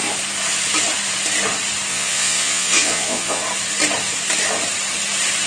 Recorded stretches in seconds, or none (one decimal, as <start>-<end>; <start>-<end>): 0.0-1.9; 3.4-5.5